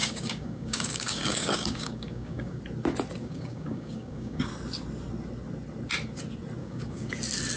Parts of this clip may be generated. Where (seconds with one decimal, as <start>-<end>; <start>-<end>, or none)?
0.0-2.6; 3.2-4.5; 6.6-7.1